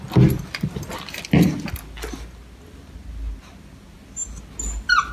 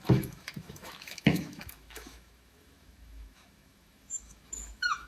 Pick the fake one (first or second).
second